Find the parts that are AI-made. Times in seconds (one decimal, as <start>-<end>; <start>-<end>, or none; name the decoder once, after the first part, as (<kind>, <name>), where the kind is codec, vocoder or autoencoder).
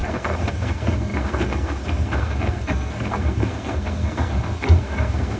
0.0-5.4 (codec, SNAC)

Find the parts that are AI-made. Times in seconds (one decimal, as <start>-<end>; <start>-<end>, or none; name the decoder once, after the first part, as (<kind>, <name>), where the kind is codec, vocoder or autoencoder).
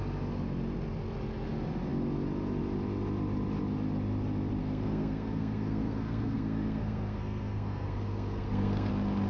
4.6-8.9 (codec, SNAC)